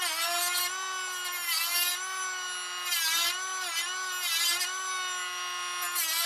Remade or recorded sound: recorded